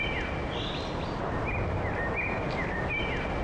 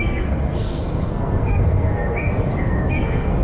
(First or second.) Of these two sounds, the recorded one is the first